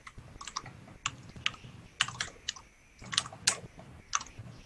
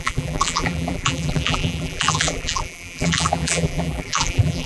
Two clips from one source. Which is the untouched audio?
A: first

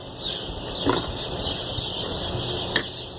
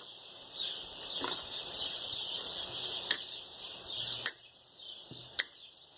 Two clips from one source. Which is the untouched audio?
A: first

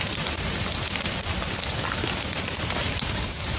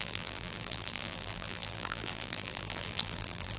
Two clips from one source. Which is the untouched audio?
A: first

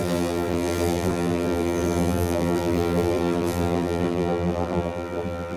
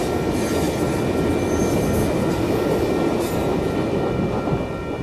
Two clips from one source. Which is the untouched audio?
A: second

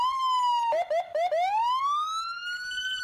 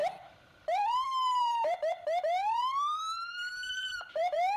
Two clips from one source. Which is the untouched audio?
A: first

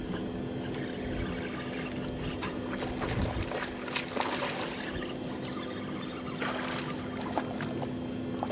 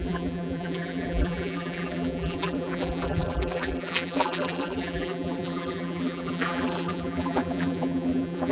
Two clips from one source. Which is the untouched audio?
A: first